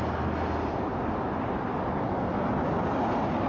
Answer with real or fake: real